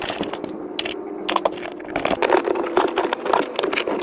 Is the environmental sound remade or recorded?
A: recorded